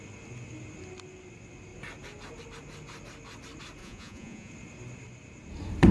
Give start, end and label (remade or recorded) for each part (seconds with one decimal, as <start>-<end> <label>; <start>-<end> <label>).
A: 0.0-3.8 recorded; 3.8-4.5 remade; 4.5-5.9 recorded